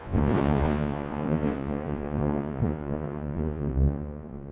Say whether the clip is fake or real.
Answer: fake